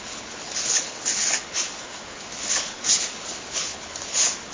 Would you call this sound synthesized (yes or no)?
yes